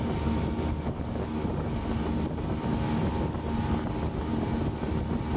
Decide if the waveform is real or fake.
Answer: real